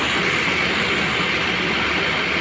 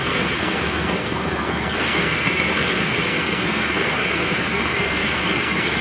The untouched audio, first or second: first